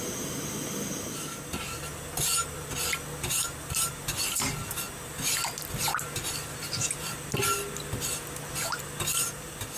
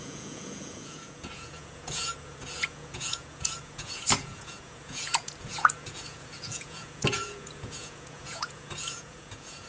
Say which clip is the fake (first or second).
second